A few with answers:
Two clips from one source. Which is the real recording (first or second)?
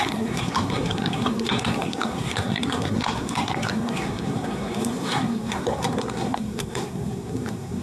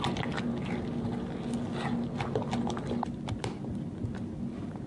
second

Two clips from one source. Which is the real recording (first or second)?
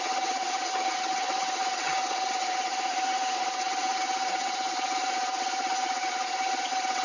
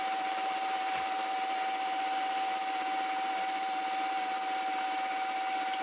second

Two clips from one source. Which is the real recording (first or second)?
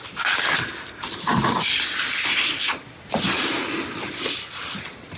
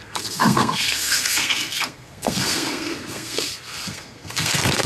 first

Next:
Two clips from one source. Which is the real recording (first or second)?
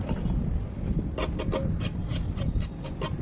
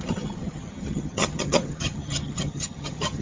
first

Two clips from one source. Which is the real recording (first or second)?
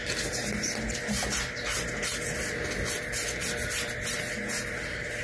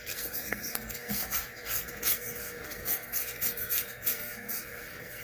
first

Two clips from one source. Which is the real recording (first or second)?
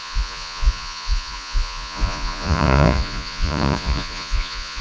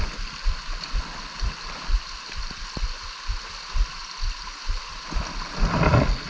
second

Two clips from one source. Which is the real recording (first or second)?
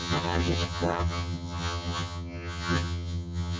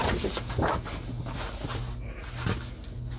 second